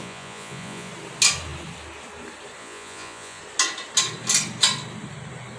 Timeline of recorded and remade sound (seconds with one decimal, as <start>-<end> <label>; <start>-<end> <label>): 0.0-0.9 remade; 0.9-2.6 recorded; 2.6-3.4 remade; 3.4-5.6 recorded